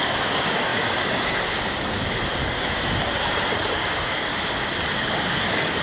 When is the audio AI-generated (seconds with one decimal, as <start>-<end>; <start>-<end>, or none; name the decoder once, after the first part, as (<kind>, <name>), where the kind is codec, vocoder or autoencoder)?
0.0-4.3 (codec, DAC); 5.1-5.8